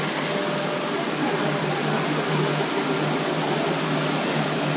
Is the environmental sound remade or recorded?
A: recorded